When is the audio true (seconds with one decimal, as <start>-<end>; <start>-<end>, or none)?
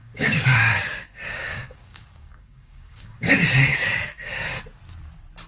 3.3-3.7; 4.6-5.5